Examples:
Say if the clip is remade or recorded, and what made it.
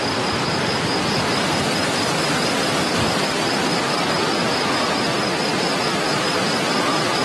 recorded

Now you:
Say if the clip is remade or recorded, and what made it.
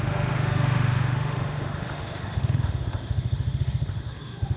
remade, autoencoder, DAC-VAE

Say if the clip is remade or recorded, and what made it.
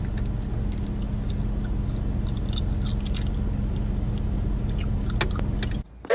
recorded